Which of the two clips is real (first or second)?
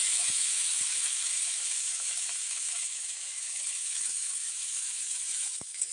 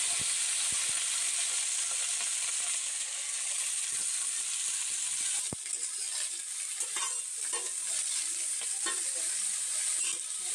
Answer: second